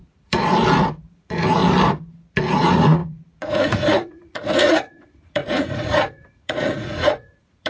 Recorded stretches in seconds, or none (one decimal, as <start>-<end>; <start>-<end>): 0.5-1.1; 1.6-2.5